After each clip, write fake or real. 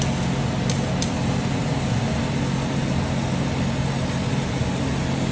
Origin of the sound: real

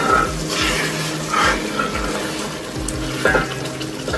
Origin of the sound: real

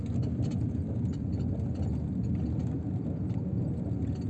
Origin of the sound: real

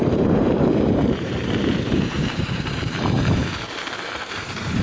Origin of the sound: fake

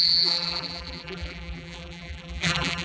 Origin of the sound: fake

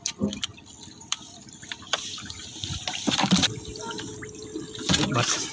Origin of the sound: fake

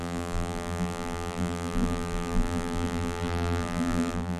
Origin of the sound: fake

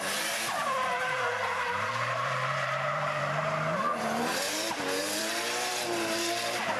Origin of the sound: fake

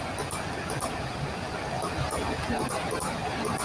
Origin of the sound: real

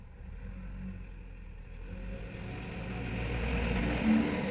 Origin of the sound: real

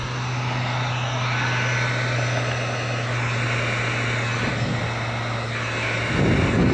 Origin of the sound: real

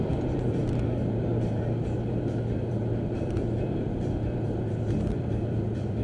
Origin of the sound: fake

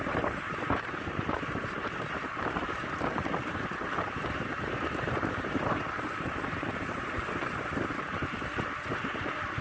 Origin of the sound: fake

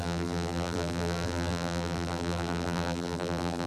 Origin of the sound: fake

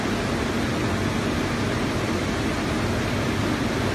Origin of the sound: real